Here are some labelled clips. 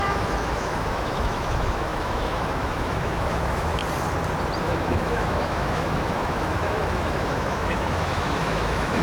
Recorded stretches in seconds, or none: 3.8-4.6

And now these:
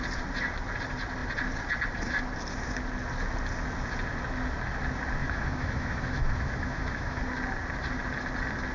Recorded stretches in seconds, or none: 0.0-5.2; 7.2-8.7

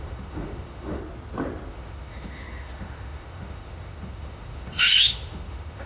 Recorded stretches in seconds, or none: 1.0-1.7

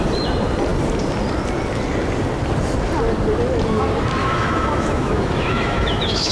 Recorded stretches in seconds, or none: 0.0-4.2